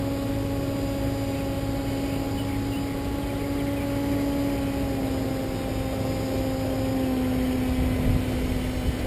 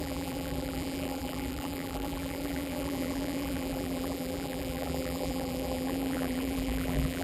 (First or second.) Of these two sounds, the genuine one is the first